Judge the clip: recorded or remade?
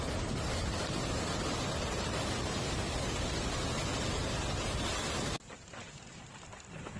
recorded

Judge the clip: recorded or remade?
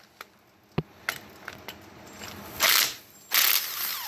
recorded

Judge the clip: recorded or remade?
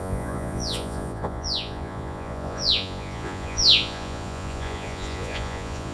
remade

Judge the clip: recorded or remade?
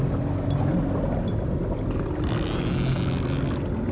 recorded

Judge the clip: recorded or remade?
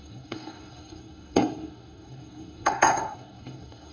remade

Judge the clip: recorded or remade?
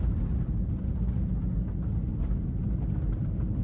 recorded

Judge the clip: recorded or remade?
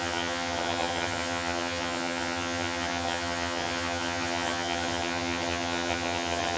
remade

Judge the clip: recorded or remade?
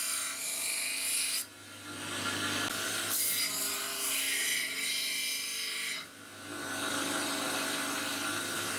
recorded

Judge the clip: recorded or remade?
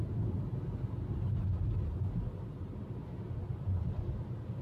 recorded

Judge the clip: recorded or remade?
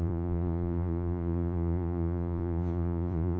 remade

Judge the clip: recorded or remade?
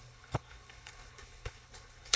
remade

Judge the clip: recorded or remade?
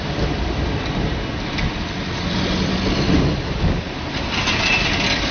remade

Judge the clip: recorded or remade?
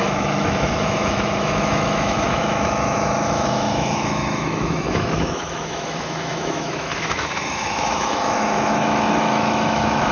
remade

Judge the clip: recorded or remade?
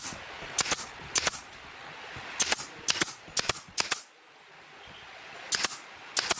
recorded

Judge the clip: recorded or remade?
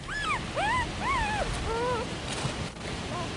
recorded